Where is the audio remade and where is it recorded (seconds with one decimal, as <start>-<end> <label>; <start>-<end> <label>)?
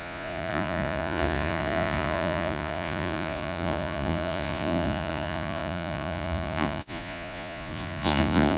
0.0-8.6 remade